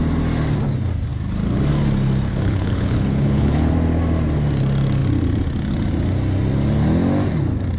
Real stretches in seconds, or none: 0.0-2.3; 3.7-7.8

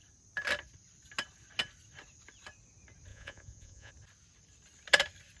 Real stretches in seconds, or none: 0.0-3.1; 3.9-5.4

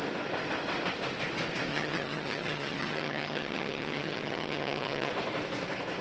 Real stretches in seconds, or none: 0.0-1.7; 5.1-6.0

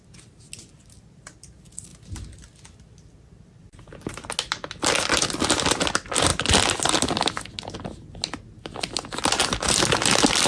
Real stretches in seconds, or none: 0.0-10.5

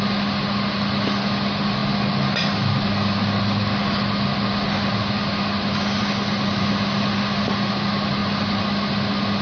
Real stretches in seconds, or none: 0.0-9.4

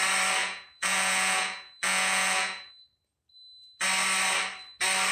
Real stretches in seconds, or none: 0.0-0.4; 2.7-5.1